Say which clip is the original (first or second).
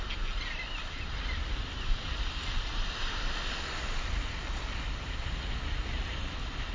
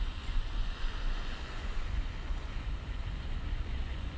first